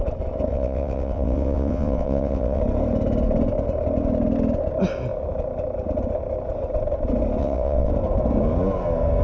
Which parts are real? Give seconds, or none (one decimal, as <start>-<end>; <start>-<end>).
0.0-0.5; 2.6-7.4; 7.9-9.2